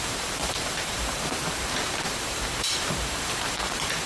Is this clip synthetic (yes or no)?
yes